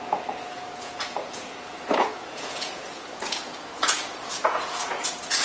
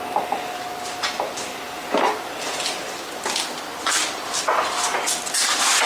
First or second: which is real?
second